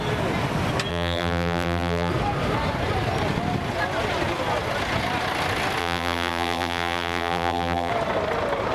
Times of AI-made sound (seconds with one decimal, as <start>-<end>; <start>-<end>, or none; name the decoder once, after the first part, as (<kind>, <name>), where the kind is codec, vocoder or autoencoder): 0.9-2.1 (vocoder, BigVGAN v2); 5.8-7.9